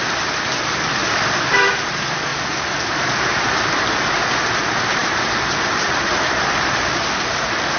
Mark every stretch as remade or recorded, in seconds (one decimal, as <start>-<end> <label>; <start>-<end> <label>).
0.0-1.0 remade; 1.0-1.5 recorded; 1.5-2.3 remade; 2.3-4.6 recorded; 4.6-7.8 remade